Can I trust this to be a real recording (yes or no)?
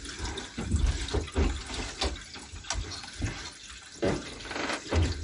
yes